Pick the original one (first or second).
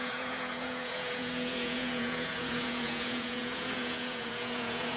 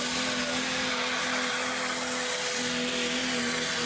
second